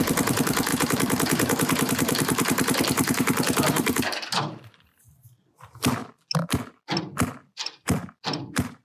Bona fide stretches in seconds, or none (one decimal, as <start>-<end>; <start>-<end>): 0.0-0.7; 5.0-8.8